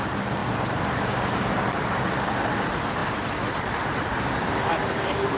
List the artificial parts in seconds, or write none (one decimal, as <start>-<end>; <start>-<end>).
0.4-2.3; 3.0-5.0